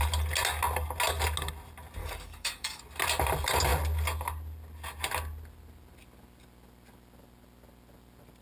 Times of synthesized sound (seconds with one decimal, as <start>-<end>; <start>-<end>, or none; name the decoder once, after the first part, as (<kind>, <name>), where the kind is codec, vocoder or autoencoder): 2.0-2.8 (codec, DAC)